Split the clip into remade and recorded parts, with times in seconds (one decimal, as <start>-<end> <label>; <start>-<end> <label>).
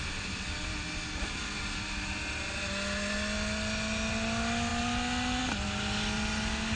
0.0-6.8 recorded